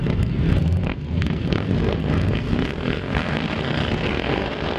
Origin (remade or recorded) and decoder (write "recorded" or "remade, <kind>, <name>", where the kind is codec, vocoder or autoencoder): remade, codec, SNAC